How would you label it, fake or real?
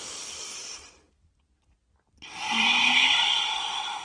real